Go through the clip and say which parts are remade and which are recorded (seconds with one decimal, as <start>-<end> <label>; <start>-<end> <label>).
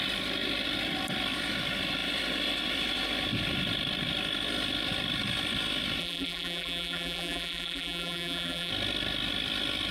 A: 0.0-6.0 recorded; 6.0-8.7 remade; 8.7-9.9 recorded